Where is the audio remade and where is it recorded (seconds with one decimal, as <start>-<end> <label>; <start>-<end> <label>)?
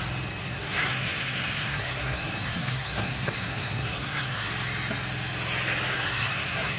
0.0-0.4 recorded; 0.4-4.5 remade; 4.5-5.9 recorded; 5.9-6.8 remade